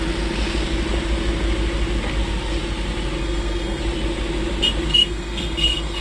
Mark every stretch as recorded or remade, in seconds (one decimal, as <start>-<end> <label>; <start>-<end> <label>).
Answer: 0.0-3.2 recorded; 3.2-3.8 remade; 3.8-4.9 recorded; 4.9-6.0 remade